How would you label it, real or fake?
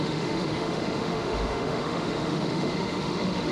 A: fake